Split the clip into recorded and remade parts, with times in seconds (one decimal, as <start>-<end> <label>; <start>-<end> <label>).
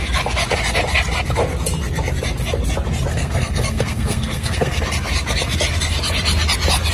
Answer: 0.0-3.1 recorded; 3.1-4.8 remade; 4.8-6.9 recorded